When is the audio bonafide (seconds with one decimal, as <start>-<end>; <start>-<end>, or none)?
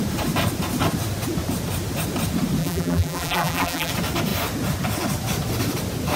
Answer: 0.0-2.6; 3.9-6.2